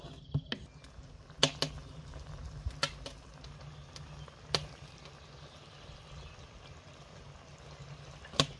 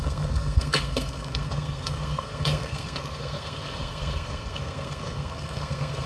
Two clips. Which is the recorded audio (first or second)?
first